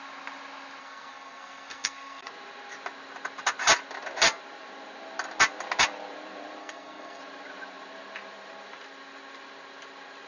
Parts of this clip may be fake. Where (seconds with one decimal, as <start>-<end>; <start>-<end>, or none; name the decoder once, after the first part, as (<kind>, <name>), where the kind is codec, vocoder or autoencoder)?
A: 0.8-2.3 (codec, SNAC); 6.6-7.2